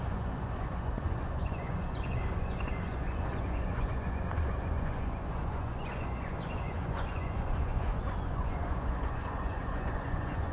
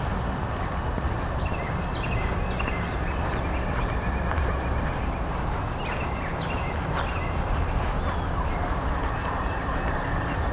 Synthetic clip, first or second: first